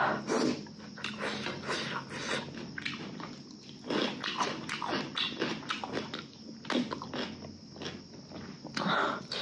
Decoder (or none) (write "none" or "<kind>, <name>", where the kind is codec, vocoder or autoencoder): none